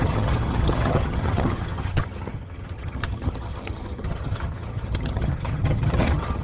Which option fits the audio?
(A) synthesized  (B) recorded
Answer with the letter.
A